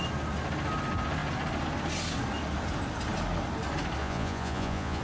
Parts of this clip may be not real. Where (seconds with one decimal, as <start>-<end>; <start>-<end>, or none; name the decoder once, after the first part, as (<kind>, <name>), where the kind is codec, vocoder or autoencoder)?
4.0-5.0 (vocoder, Vocos)

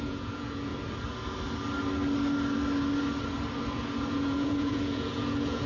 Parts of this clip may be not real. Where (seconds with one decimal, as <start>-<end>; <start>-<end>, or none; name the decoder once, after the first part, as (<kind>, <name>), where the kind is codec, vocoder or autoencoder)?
0.0-0.7 (vocoder, Vocos); 4.1-5.7

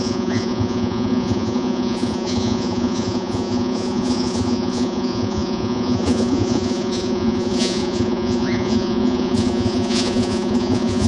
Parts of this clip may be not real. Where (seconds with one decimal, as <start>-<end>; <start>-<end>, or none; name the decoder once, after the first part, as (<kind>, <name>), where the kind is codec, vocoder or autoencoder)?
0.0-11.1 (vocoder, Vocos)

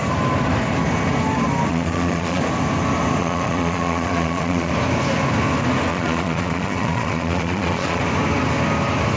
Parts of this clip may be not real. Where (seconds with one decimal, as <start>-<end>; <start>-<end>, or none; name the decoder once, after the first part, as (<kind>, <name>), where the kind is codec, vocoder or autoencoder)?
1.7-2.4 (vocoder, Vocos); 3.2-4.7; 5.9-8.0

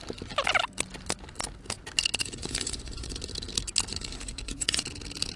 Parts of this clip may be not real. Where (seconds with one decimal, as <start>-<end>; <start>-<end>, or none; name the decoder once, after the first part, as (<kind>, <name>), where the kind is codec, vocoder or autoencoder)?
2.2-3.2 (vocoder, Vocos); 3.9-4.8

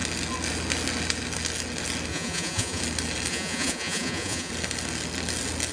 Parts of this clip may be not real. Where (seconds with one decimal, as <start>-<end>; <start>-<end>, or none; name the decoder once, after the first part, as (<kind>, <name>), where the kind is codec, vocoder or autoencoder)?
2.1-2.8 (vocoder, Vocos); 3.3-4.5

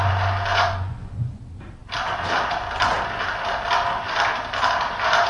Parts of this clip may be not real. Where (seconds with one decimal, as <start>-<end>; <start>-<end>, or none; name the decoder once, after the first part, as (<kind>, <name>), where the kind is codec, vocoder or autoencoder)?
0.5-1.4 (vocoder, Vocos)

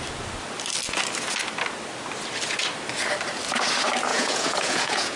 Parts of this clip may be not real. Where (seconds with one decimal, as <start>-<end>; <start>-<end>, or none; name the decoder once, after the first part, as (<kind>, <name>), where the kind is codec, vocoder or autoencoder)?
4.1-5.2 (vocoder, Vocos)